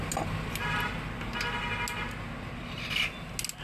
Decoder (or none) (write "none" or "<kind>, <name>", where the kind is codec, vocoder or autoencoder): none